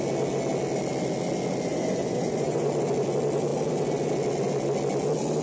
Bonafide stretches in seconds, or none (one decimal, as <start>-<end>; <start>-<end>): 0.0-1.7; 2.7-5.4